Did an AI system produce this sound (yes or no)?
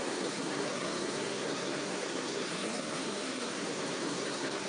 yes